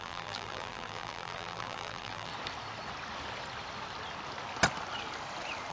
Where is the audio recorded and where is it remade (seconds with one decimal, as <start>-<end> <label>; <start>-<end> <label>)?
0.0-2.3 remade; 2.3-5.7 recorded